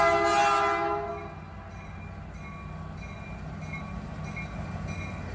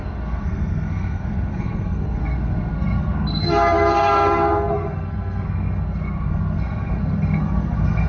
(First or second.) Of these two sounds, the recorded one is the first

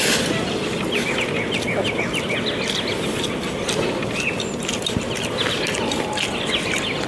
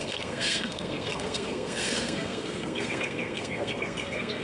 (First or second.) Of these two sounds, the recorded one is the first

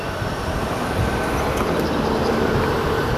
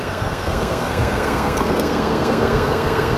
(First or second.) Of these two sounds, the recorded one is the first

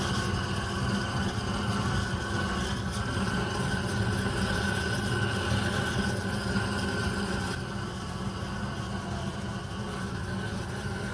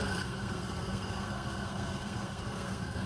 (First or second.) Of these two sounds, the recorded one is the first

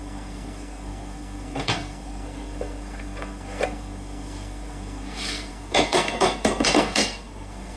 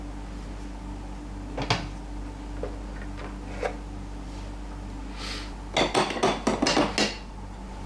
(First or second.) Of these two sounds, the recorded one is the second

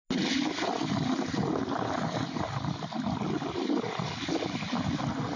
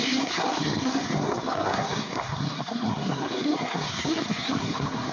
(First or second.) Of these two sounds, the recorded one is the first